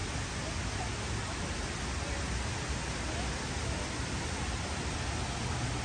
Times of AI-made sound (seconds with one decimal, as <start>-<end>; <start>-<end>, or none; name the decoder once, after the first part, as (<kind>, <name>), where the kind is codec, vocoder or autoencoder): 3.6-4.4 (vocoder, BigVGAN v2)